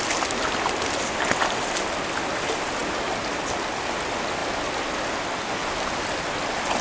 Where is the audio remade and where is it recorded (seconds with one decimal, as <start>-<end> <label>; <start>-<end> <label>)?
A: 0.0-6.8 recorded